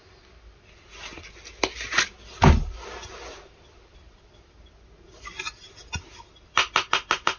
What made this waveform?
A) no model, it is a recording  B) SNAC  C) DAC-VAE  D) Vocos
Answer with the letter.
A